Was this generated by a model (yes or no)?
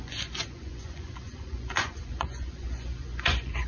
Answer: yes